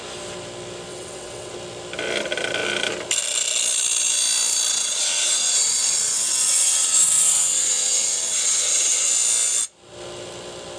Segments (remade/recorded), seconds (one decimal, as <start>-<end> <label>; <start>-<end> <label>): 0.0-0.9 recorded; 0.9-1.5 remade; 1.5-4.7 recorded; 4.7-9.1 remade; 9.1-10.8 recorded